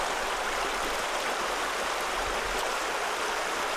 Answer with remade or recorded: recorded